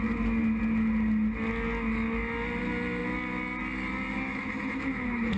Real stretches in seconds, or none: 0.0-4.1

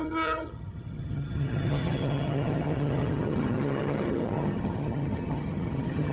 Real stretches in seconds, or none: none